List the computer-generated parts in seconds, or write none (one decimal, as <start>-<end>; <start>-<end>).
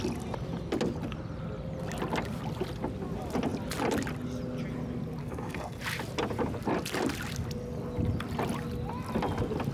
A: 5.2-5.8